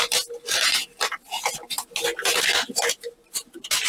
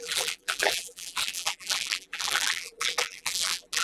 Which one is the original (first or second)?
first